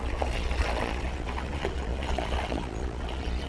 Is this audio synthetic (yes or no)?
yes